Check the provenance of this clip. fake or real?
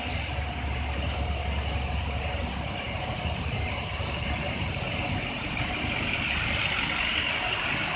fake